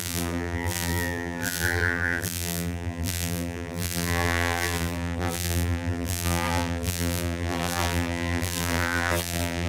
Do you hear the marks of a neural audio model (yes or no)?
yes